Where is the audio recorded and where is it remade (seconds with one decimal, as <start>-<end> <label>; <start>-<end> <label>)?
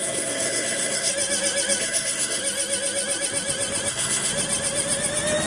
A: 0.0-1.1 remade; 1.1-1.8 recorded; 1.8-2.4 remade; 2.4-3.9 recorded; 3.9-4.3 remade; 4.3-5.5 recorded